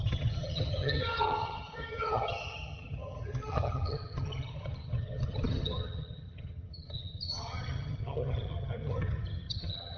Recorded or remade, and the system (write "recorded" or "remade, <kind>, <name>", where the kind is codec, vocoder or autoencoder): remade, vocoder, HiFi-GAN